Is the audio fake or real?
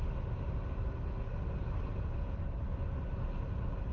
real